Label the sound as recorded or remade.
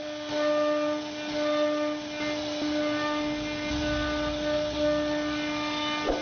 recorded